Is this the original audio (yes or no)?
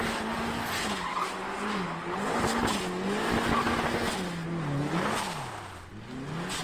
yes